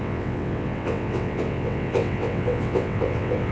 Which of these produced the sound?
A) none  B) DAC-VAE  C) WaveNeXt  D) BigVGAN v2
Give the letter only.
C